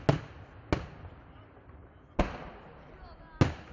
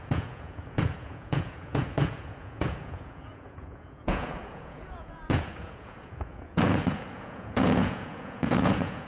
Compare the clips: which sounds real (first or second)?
first